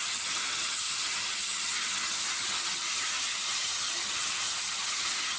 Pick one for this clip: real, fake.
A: fake